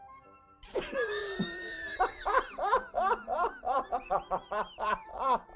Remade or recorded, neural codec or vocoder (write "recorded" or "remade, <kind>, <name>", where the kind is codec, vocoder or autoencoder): remade, vocoder, BigVGAN v2